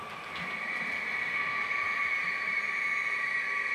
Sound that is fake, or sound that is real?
real